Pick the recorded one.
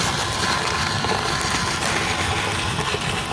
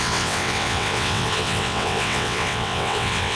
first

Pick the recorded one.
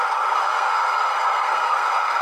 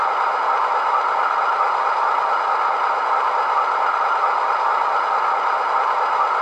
second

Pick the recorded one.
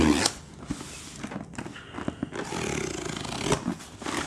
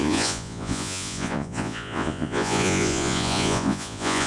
first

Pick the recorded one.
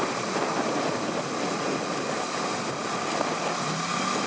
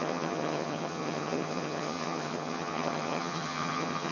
first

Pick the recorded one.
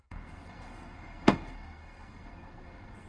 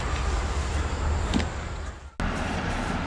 second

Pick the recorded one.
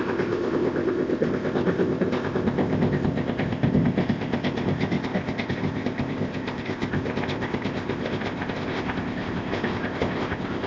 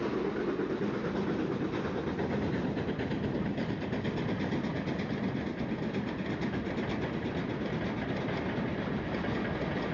second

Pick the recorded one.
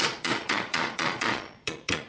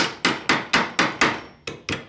second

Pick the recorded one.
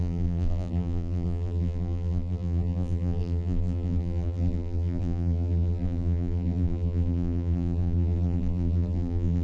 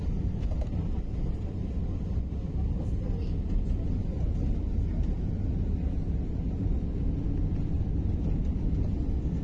second